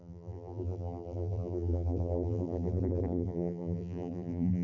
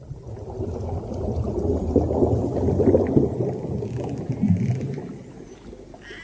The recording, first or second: second